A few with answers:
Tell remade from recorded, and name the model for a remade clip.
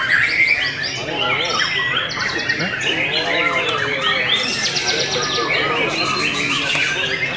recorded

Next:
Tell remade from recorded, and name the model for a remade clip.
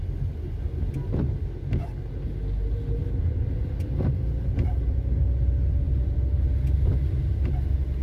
recorded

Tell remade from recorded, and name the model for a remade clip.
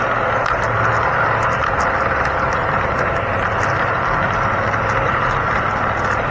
recorded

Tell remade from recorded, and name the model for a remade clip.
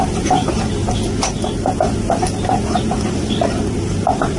recorded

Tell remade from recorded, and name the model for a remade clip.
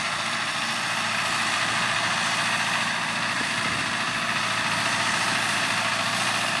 remade, vocoder, BigVGAN v2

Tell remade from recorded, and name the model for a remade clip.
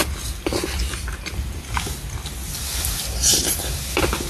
recorded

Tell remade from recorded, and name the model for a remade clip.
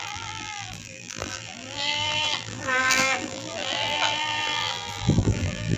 remade, vocoder, BigVGAN v2